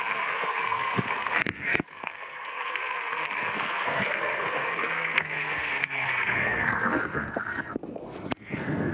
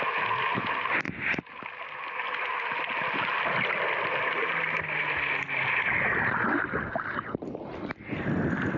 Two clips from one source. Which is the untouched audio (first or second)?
second